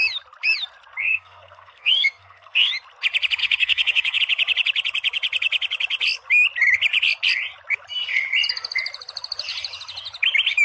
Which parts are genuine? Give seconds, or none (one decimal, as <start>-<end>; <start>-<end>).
0.0-1.0; 2.7-3.4; 4.2-10.6